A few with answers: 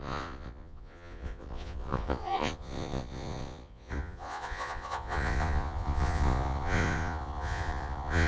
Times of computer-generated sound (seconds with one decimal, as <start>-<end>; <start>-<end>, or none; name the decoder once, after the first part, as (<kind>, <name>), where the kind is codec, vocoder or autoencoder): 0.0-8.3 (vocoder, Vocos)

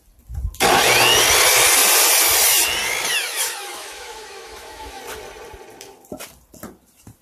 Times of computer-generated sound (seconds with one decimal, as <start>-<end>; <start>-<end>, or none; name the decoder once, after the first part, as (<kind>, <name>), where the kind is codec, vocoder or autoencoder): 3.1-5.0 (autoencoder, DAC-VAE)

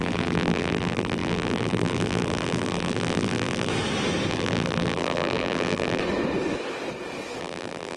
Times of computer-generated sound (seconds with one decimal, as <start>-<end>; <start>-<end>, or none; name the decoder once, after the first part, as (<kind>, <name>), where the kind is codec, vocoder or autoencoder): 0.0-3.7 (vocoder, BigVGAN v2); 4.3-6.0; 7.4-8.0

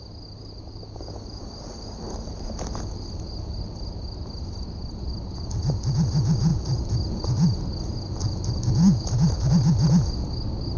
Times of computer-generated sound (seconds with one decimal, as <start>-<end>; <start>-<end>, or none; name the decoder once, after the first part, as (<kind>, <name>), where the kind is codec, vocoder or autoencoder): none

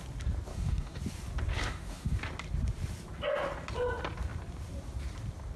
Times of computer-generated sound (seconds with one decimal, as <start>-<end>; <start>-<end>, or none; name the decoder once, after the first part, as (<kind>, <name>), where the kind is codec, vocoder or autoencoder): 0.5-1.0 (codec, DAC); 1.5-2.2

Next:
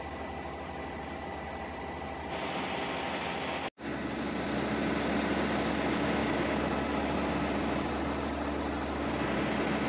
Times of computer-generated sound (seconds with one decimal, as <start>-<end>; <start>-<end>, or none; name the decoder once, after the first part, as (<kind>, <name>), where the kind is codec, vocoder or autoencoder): none

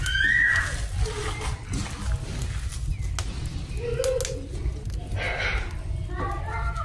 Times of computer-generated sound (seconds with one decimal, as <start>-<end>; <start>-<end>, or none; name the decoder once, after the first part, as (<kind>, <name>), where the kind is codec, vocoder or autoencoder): none

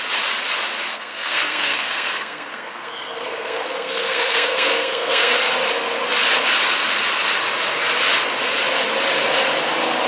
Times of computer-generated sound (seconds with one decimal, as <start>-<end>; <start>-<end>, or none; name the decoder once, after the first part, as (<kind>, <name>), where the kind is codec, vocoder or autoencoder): 0.9-5.4 (codec, SNAC)